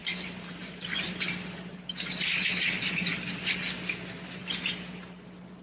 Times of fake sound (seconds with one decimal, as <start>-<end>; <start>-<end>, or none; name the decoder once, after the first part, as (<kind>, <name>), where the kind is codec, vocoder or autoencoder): 0.0-1.2 (vocoder, BigVGAN v2)